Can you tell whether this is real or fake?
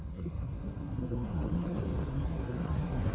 fake